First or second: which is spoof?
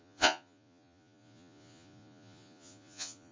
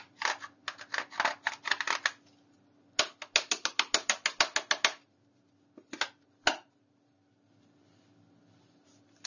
first